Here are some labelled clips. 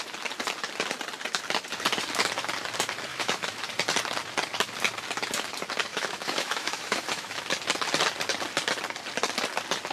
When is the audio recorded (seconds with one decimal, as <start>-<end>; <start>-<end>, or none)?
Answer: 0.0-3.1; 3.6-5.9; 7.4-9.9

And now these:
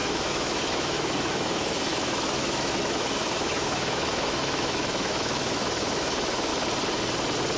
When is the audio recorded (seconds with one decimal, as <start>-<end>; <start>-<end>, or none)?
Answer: 6.5-7.6

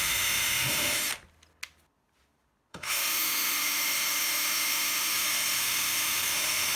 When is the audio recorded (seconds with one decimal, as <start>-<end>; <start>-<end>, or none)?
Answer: 1.0-2.7